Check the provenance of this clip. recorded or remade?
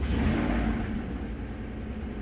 recorded